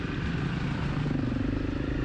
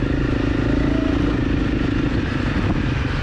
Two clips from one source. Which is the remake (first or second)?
first